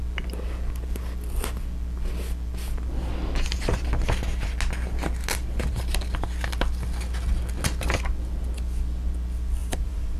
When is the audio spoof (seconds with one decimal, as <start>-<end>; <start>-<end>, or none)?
9.6-10.2